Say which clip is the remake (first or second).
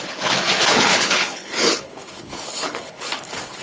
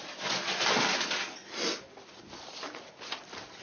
first